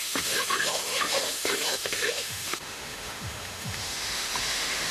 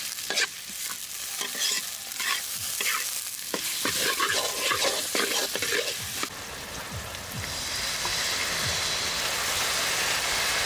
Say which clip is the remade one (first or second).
first